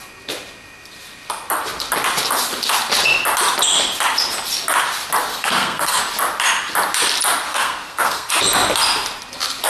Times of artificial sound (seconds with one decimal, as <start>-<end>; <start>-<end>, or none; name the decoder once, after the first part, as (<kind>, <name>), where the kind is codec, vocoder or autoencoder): 5.3-6.0 (codec, SNAC); 7.5-8.3